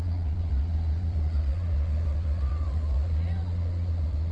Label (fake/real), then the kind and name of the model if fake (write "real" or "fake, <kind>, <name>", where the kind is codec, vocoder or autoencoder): fake, vocoder, Vocos